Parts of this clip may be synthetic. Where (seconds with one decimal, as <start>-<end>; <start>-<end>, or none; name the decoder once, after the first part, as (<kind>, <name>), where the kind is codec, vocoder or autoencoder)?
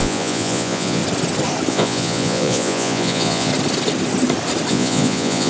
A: 0.0-1.0 (vocoder, Vocos); 1.7-3.5; 4.7-5.5